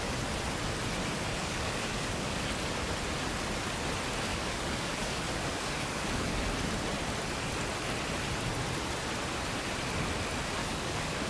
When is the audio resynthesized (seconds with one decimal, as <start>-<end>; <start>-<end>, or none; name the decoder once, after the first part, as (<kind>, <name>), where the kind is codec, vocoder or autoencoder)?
1.4-2.5 (codec, DAC); 4.3-6.4; 10.6-11.3